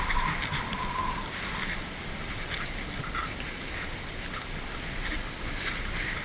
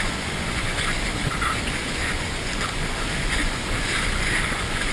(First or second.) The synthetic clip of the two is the second